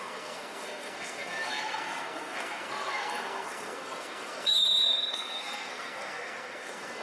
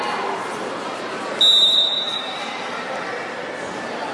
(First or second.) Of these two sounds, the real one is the second